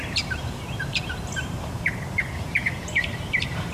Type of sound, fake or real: fake